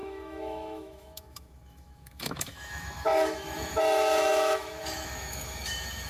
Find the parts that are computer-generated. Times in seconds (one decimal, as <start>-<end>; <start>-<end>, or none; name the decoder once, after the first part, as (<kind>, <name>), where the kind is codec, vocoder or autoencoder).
0.0-6.1 (autoencoder, DAC-VAE)